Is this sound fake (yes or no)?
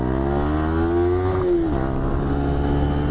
no